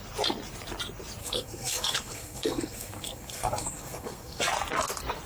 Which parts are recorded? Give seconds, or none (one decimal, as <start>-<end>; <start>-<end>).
0.0-1.2; 4.4-5.3